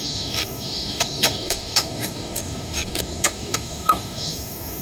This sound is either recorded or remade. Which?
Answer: remade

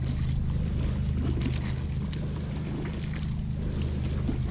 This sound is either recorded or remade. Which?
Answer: recorded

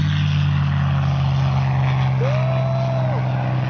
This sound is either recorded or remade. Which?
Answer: recorded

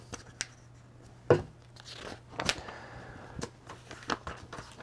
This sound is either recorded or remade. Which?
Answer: recorded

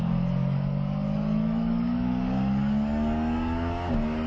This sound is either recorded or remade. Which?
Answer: remade